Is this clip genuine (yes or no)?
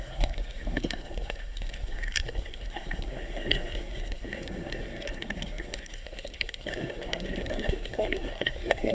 no